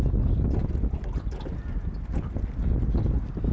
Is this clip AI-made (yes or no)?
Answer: no